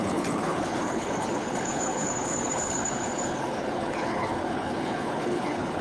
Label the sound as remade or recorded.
remade